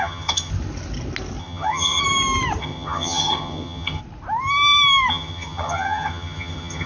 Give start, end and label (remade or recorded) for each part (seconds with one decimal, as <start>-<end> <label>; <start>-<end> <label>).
0.0-0.5 remade; 0.5-1.4 recorded; 1.4-2.0 remade; 2.0-2.6 recorded; 2.6-4.0 remade; 4.0-5.1 recorded; 5.1-6.9 remade